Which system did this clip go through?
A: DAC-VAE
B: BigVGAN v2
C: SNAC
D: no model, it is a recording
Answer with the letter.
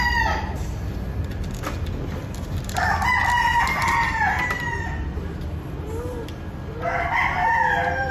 D